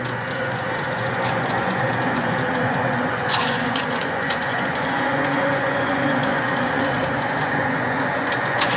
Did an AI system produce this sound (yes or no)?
yes